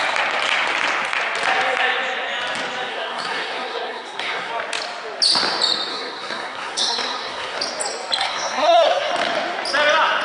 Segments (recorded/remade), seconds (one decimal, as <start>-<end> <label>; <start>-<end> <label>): 0.0-2.9 recorded; 2.9-4.5 remade; 4.5-5.9 recorded; 5.9-7.6 remade; 7.6-8.2 recorded; 8.2-9.1 remade; 9.1-10.2 recorded